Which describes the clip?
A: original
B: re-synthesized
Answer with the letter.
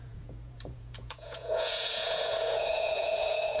B